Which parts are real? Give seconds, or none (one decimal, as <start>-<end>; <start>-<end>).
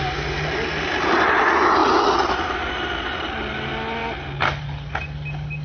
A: 0.0-1.8; 2.7-5.6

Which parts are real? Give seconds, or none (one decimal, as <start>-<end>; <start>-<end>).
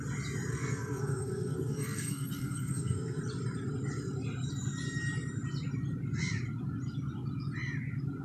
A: 0.0-0.5; 3.2-8.2